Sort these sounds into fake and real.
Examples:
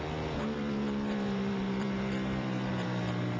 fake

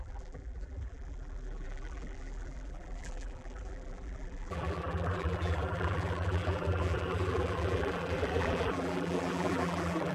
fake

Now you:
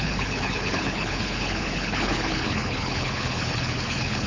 fake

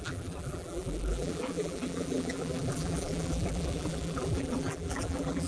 fake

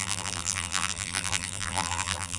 fake